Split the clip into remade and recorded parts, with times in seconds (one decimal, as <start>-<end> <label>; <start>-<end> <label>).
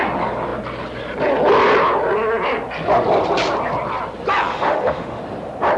0.0-4.5 recorded; 4.5-5.2 remade; 5.2-5.8 recorded